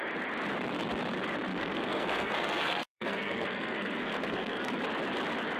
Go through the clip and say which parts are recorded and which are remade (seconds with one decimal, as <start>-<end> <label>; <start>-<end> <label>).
0.0-1.5 recorded; 1.5-4.8 remade; 4.8-5.6 recorded

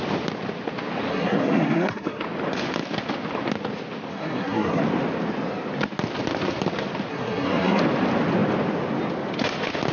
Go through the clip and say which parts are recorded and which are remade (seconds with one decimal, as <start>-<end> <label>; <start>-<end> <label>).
0.0-1.1 recorded; 1.1-2.2 remade; 2.2-4.1 recorded; 4.1-4.8 remade; 4.8-7.1 recorded; 7.1-7.8 remade; 7.8-9.9 recorded